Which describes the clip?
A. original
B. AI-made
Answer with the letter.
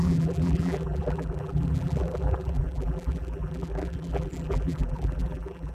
B